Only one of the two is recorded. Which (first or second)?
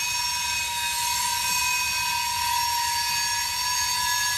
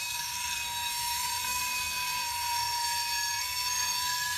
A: first